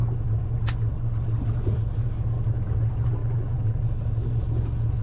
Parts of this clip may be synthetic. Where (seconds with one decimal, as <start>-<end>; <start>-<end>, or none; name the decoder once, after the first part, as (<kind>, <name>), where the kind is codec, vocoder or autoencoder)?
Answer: 3.2-3.8 (vocoder, BigVGAN v2)